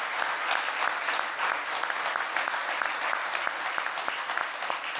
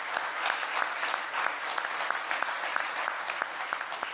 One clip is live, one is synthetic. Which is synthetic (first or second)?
second